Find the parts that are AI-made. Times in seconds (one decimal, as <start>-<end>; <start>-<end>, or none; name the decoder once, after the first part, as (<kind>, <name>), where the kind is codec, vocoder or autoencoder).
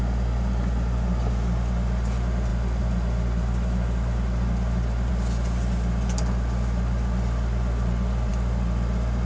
none